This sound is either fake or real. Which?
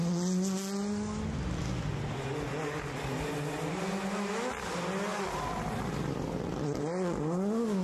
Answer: real